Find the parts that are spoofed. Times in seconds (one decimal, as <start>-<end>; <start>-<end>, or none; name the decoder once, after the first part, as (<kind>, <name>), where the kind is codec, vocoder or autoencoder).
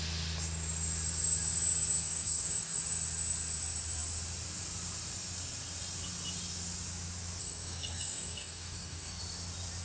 2.0-2.8 (codec, DAC); 7.4-9.2